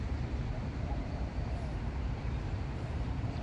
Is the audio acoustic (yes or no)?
no